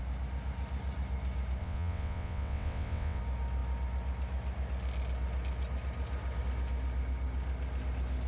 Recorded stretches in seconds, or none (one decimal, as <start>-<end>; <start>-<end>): 0.0-1.6; 3.2-8.3